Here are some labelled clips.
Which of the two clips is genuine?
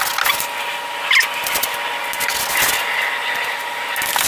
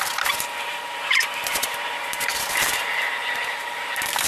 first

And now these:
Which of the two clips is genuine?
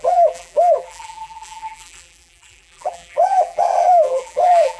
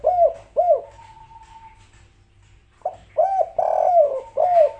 second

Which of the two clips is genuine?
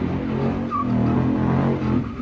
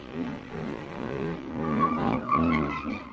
first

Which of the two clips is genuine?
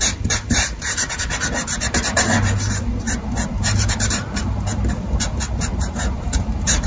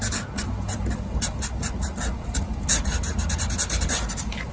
second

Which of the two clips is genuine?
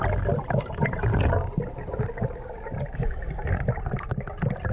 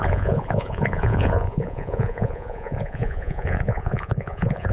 first